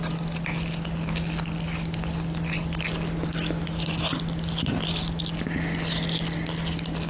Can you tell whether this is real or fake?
real